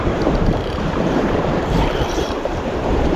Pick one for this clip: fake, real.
fake